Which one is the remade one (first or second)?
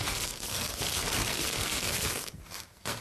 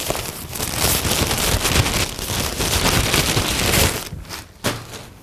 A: first